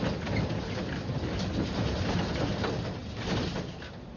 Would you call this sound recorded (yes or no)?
yes